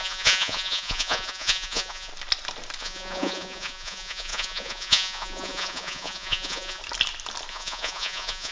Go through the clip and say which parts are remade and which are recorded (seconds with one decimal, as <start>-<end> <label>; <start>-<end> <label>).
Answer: 0.0-2.1 remade; 2.1-2.8 recorded; 2.8-6.8 remade; 6.8-7.5 recorded; 7.5-8.5 remade